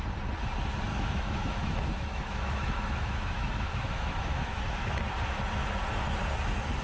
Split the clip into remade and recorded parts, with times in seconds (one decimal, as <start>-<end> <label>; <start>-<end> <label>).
0.0-0.9 recorded; 0.9-5.0 remade; 5.0-6.8 recorded